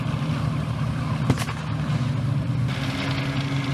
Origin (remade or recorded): recorded